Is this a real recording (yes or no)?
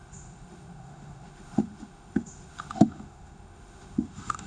no